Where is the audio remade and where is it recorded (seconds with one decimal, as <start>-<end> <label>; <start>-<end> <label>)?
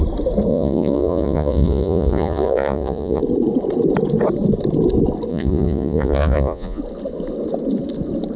0.0-0.5 recorded; 0.5-3.2 remade; 3.2-5.3 recorded; 5.3-6.8 remade; 6.8-8.4 recorded